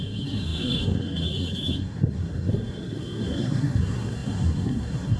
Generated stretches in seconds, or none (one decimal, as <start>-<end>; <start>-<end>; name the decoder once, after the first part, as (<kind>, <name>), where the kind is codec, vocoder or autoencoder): 0.0-5.2 (codec, SNAC)